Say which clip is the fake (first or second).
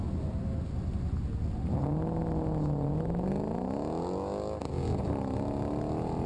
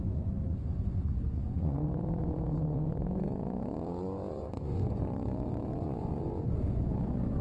second